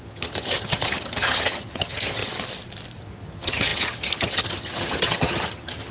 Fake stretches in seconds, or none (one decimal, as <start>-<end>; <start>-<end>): 0.0-2.2; 3.0-5.9